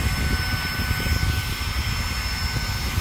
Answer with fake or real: real